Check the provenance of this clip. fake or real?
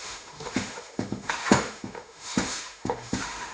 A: fake